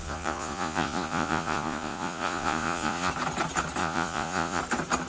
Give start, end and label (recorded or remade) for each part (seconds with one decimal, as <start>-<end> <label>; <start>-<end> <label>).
0.0-3.1 remade; 3.1-3.8 recorded; 3.8-4.6 remade; 4.6-5.1 recorded